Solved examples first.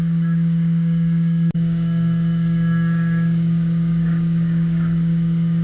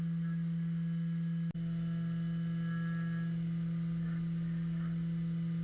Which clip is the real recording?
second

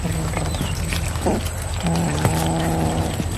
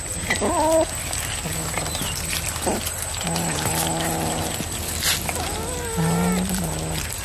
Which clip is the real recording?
second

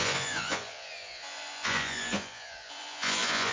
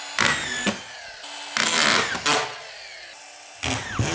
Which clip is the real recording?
second